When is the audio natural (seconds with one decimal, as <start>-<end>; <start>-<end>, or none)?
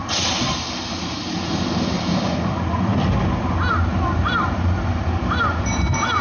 0.0-6.2